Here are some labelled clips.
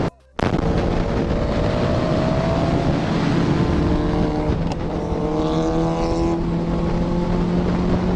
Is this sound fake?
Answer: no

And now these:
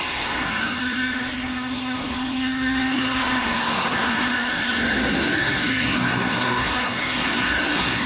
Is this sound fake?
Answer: yes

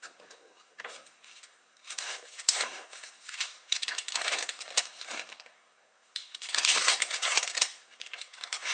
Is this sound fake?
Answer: yes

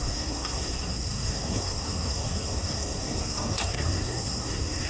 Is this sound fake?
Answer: yes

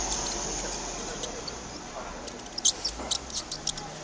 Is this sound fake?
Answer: no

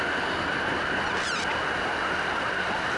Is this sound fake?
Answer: no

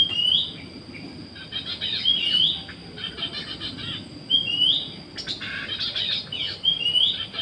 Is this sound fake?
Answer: no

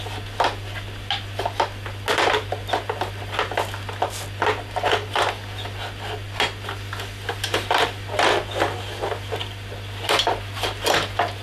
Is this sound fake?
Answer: no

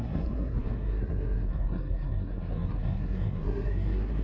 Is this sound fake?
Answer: yes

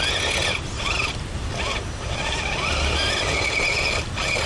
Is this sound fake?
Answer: no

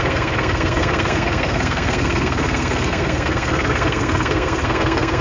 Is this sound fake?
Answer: yes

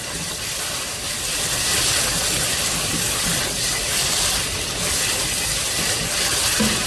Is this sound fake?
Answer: no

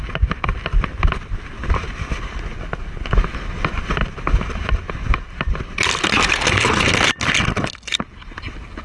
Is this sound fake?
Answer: no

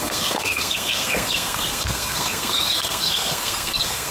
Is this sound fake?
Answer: yes